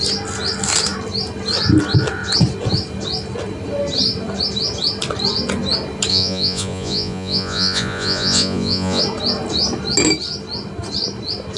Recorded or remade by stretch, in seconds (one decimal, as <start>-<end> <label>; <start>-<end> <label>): 0.0-6.1 recorded; 6.1-9.0 remade; 9.0-11.6 recorded